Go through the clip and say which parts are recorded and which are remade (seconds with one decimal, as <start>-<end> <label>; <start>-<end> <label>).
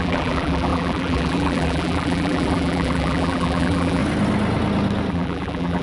0.0-4.0 remade; 4.0-5.1 recorded; 5.1-5.8 remade